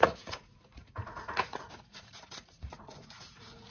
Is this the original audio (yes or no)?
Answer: no